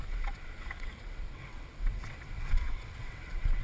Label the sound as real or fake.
fake